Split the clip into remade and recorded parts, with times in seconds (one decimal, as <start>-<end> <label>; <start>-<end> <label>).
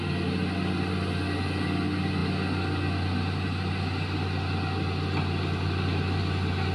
0.0-6.7 recorded